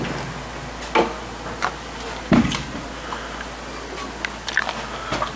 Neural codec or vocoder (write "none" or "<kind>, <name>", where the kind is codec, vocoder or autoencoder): none